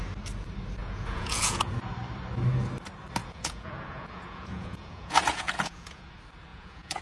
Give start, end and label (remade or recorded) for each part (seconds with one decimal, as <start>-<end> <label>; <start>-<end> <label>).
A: 0.0-0.8 recorded; 0.8-1.7 remade; 1.7-3.2 recorded; 3.2-6.1 remade; 6.1-6.5 recorded; 6.5-7.0 remade